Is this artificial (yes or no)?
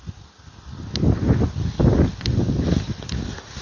no